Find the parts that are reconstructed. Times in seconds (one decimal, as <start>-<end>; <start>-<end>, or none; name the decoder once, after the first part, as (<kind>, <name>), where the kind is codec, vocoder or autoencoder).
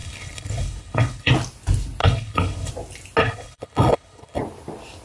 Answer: 0.0-1.3 (codec, HILCodec); 2.0-2.7; 3.2-4.4